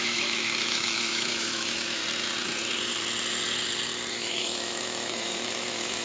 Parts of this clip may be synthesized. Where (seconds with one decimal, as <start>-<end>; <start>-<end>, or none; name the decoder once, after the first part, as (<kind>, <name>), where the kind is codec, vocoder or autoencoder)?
0.0-2.0 (autoencoder, DAC-VAE); 4.1-6.0